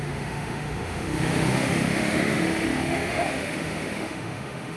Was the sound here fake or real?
fake